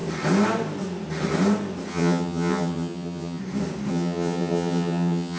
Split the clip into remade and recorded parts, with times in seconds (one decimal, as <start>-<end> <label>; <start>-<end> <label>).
0.0-1.9 recorded; 1.9-3.4 remade; 3.4-3.9 recorded; 3.9-5.4 remade